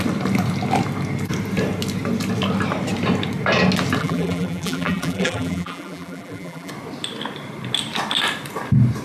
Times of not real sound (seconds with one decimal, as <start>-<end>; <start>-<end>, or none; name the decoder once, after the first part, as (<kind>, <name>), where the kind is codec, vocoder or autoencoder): 4.0-6.7 (vocoder, BigVGAN v2)